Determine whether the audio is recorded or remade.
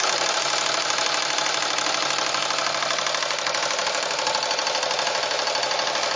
recorded